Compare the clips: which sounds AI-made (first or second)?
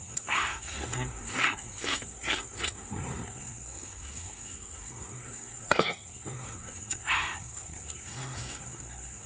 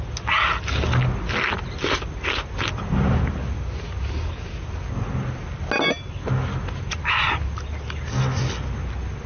first